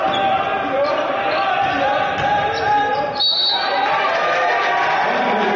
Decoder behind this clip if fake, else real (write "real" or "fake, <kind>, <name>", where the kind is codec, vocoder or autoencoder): real